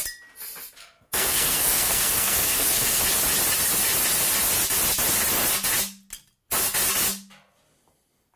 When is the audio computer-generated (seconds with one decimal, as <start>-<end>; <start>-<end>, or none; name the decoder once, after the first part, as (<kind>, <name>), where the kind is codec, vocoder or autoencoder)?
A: 0.8-3.0 (codec, SNAC)